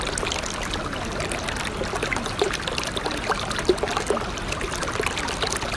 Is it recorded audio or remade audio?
recorded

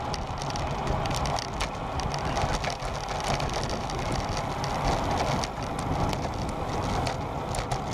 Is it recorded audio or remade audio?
recorded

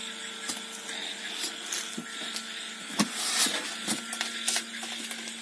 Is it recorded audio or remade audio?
recorded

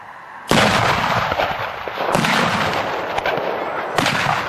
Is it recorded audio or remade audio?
recorded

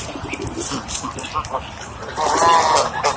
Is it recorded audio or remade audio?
recorded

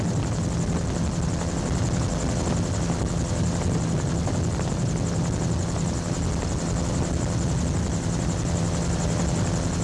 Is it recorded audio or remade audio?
recorded